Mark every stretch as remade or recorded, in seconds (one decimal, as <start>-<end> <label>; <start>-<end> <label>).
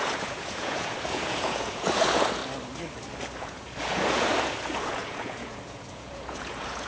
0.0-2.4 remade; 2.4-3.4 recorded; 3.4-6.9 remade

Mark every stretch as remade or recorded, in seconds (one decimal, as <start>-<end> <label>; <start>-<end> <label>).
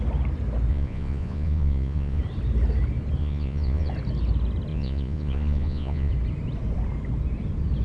0.0-0.7 recorded; 0.7-2.2 remade; 2.2-3.2 recorded; 3.2-3.9 remade; 3.9-4.7 recorded; 4.7-6.1 remade; 6.1-7.8 recorded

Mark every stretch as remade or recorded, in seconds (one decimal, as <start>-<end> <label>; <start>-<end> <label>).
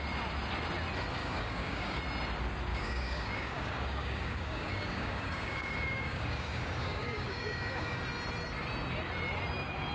0.0-1.2 recorded; 1.2-2.0 remade; 2.0-2.7 recorded; 2.7-8.0 remade; 8.0-9.9 recorded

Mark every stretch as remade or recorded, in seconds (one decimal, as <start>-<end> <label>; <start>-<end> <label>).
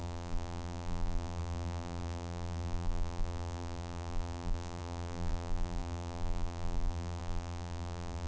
0.0-8.3 remade